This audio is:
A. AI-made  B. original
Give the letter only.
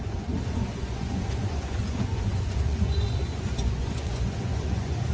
A